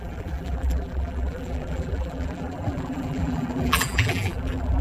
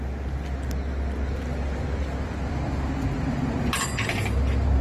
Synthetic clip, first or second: first